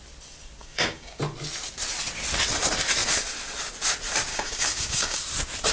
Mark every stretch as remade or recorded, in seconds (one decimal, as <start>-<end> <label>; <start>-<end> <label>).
0.0-0.6 recorded; 0.6-1.2 remade; 1.2-4.3 recorded; 4.3-5.2 remade; 5.2-5.7 recorded